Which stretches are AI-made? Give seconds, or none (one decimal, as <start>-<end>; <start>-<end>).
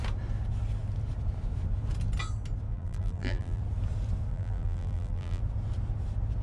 2.7-3.6; 4.3-5.4